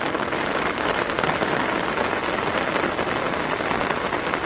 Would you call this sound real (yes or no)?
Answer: yes